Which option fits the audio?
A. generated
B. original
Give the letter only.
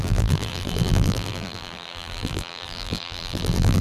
A